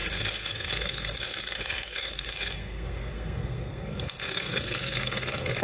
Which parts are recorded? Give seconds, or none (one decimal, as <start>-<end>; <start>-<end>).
none